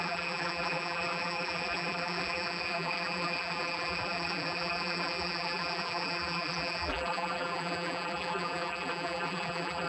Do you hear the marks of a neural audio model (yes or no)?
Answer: yes